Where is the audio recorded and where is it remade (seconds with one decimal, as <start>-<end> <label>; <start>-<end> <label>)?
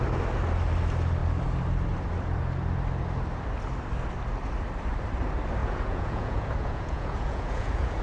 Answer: 0.0-5.6 recorded; 5.6-8.0 remade